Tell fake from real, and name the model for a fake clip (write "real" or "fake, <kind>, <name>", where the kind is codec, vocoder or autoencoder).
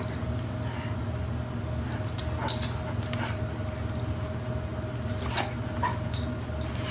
real